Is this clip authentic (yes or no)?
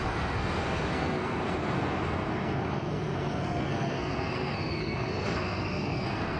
no